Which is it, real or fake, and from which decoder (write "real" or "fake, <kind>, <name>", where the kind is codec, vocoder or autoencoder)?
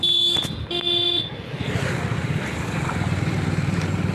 real